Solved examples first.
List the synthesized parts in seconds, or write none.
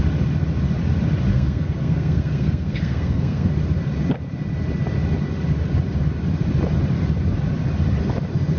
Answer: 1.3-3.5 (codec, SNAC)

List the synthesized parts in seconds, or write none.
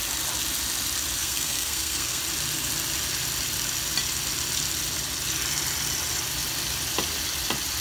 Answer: 1.2-2.2 (codec, SNAC)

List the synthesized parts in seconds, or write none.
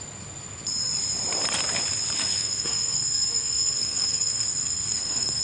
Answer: 2.4-5.4 (codec, SNAC)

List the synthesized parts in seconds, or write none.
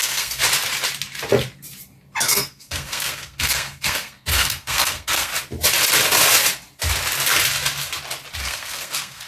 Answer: 0.0-0.4 (codec, SNAC); 2.2-5.3; 8.4-9.3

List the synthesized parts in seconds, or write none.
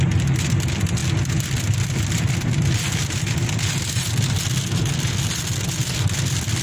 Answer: none